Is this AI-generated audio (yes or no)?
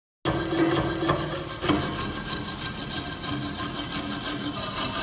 no